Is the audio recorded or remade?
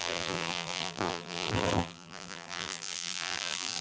remade